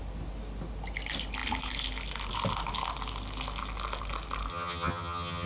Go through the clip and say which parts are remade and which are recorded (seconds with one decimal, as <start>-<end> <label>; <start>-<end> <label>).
0.0-4.5 recorded; 4.5-5.5 remade